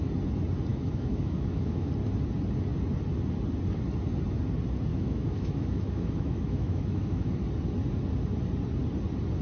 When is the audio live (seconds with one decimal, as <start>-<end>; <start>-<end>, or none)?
0.0-0.7; 1.9-4.9; 7.3-9.4

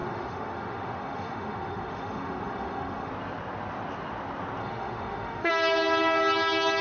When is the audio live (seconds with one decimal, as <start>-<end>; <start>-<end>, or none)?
3.1-4.6; 5.5-6.8

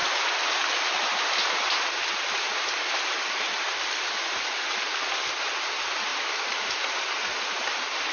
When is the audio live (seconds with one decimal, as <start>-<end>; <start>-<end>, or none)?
0.0-8.1

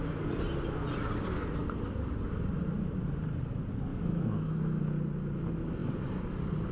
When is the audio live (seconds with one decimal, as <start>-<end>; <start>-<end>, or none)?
0.0-3.9; 4.8-6.7

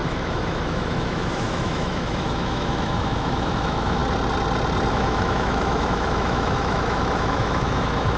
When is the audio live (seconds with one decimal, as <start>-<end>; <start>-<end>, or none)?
4.0-4.9